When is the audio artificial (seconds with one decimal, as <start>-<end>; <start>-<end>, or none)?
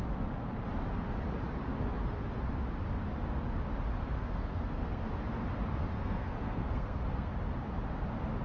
4.2-5.0; 5.8-7.3